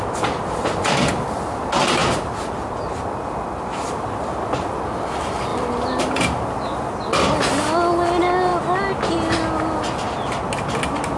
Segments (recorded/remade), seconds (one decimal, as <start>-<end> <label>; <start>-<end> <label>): 0.0-11.2 recorded